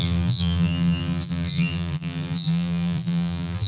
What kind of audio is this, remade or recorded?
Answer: remade